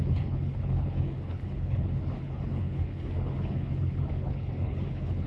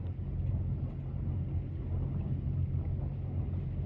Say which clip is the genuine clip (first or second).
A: second